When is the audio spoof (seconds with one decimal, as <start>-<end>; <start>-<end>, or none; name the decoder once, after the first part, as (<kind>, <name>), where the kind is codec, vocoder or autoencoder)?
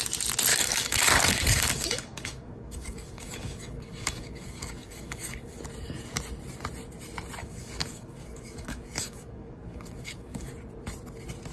0.5-5.6 (codec, DAC); 7.4-10.5